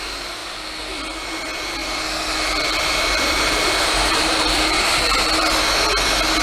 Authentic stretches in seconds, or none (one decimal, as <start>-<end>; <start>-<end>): 0.0-1.8; 5.6-6.4